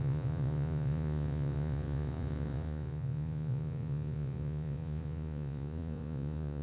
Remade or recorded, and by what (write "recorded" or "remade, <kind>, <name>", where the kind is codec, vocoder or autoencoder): remade, vocoder, Vocos